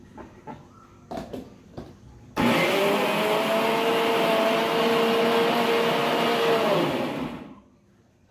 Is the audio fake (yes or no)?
no